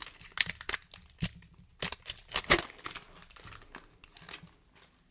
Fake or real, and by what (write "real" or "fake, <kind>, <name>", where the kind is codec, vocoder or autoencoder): real